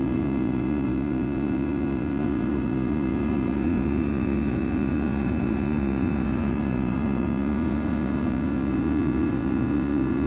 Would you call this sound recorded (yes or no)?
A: no